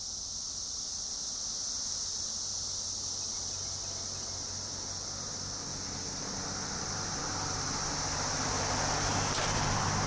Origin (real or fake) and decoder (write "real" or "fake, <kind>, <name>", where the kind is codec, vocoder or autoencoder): real